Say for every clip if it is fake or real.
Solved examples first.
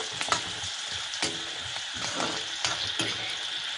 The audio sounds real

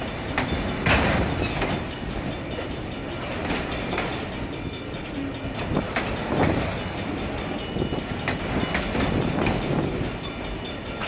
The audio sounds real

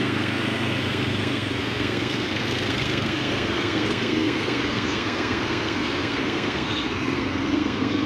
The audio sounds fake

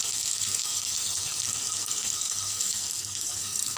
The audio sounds fake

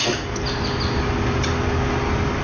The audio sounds real